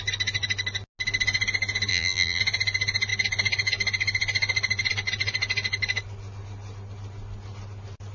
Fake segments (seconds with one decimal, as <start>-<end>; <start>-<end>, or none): 1.9-2.4